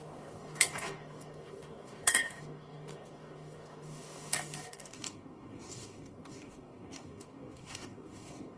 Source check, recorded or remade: remade